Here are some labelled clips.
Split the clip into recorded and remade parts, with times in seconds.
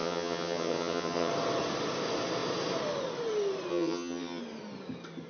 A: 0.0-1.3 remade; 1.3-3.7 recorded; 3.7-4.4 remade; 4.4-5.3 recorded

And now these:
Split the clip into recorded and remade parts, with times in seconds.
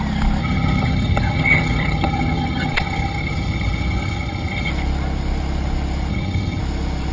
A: 0.0-0.4 recorded; 0.4-4.7 remade; 4.7-6.1 recorded; 6.1-6.6 remade; 6.6-7.1 recorded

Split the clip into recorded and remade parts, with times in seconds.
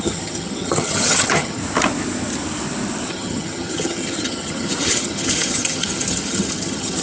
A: 0.0-1.6 remade; 1.6-3.1 recorded; 3.1-7.0 remade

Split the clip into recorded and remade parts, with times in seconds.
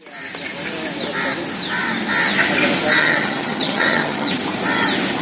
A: 0.0-3.0 recorded; 3.0-4.3 remade; 4.3-5.2 recorded